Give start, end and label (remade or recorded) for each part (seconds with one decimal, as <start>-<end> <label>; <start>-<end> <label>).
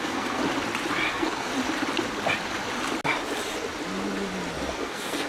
0.0-0.4 remade; 0.4-1.1 recorded; 1.1-1.5 remade; 1.5-4.7 recorded; 4.7-5.3 remade